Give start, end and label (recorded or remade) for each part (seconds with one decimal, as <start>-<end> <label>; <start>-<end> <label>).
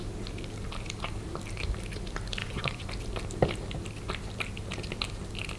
0.0-2.4 recorded; 2.4-2.9 remade; 2.9-5.6 recorded